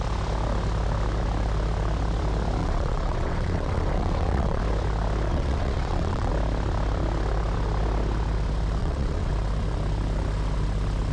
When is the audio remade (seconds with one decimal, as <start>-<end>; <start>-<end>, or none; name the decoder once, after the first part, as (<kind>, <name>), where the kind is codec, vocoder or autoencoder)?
2.6-4.6 (vocoder, WaveNeXt); 5.3-6.3; 8.8-9.3